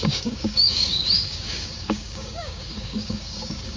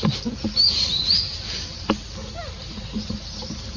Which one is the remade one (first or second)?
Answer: first